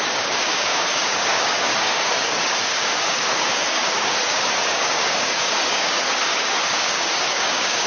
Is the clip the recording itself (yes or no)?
no